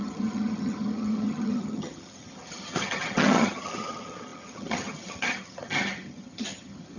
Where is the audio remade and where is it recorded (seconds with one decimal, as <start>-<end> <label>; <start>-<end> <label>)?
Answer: 0.0-7.0 remade